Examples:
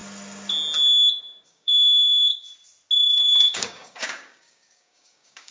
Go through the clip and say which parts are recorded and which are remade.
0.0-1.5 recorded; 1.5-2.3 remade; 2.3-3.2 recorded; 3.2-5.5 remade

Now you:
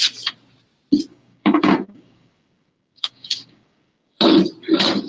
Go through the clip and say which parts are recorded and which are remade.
0.0-1.1 recorded; 1.1-4.2 remade; 4.2-5.1 recorded

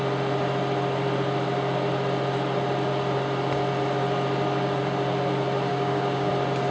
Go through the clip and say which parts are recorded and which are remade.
0.0-5.7 recorded; 5.7-6.3 remade; 6.3-6.7 recorded

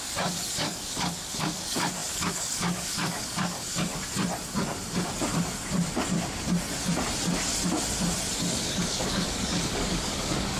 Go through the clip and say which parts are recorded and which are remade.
0.0-3.9 remade; 3.9-8.5 recorded; 8.5-10.6 remade

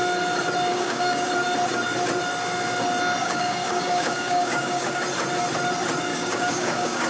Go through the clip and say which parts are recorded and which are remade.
0.0-0.7 recorded; 0.7-1.3 remade; 1.3-3.2 recorded; 3.2-5.0 remade; 5.0-6.1 recorded; 6.1-7.1 remade

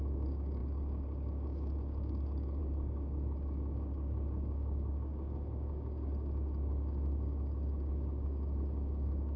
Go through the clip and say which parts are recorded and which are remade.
0.0-9.4 remade

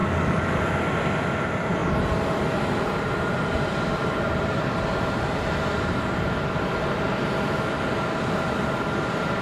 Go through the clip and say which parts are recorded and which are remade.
0.0-0.6 remade; 0.6-9.4 recorded